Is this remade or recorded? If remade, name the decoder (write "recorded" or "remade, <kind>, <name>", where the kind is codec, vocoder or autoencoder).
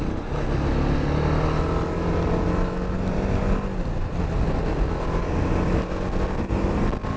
recorded